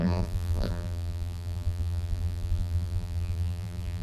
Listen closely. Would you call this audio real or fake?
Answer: fake